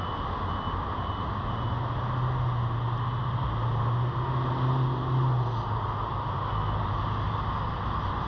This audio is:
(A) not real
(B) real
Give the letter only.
B